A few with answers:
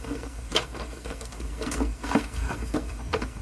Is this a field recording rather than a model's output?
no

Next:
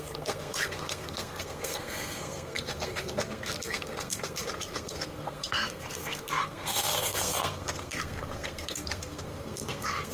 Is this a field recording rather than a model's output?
no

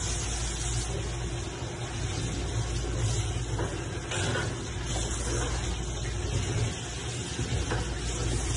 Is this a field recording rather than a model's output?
yes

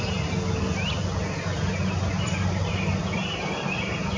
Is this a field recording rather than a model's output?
yes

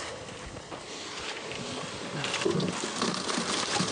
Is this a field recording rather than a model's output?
yes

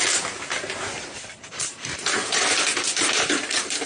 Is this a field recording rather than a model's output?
no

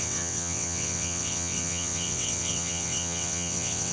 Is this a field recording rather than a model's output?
no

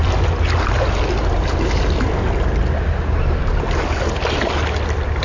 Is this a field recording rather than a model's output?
yes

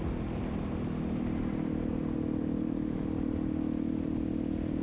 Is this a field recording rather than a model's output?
yes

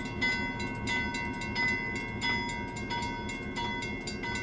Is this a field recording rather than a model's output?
yes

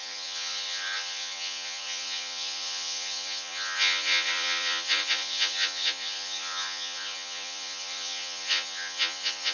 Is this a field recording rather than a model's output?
no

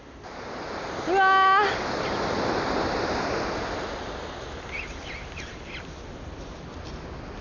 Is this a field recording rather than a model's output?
yes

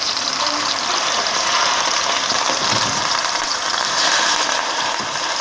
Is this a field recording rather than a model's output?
no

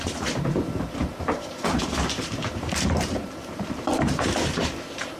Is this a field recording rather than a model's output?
no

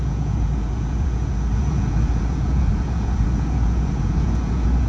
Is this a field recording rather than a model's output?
no